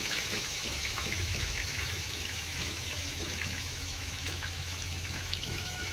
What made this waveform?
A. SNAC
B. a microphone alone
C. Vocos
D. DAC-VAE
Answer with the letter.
D